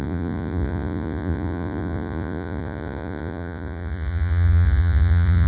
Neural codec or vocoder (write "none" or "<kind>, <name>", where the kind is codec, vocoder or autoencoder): vocoder, Vocos